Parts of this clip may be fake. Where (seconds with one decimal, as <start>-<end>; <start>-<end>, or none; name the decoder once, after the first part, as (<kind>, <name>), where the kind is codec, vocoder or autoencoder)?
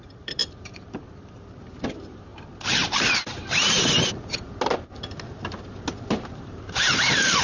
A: 0.0-2.3 (vocoder, BigVGAN v2); 6.1-7.4